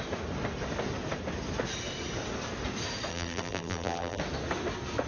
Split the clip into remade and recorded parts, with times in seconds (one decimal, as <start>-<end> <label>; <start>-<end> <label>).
0.0-3.1 recorded; 3.1-4.2 remade; 4.2-5.1 recorded